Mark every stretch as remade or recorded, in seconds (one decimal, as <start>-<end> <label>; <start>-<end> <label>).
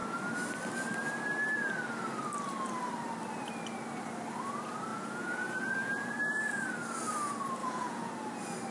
0.0-4.9 recorded; 4.9-6.1 remade; 6.1-7.6 recorded; 7.6-8.1 remade; 8.1-8.7 recorded